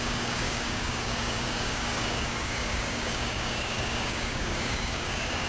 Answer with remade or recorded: remade